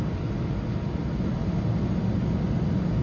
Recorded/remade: recorded